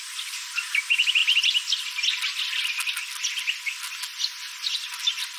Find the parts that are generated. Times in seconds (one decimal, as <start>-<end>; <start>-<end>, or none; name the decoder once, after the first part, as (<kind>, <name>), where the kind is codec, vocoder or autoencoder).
none